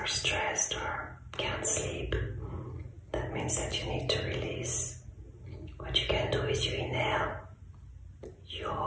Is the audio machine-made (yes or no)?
no